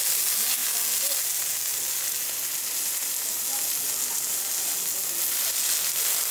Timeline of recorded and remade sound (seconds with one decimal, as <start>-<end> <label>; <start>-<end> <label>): 0.0-6.3 recorded